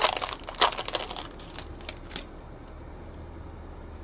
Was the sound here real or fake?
real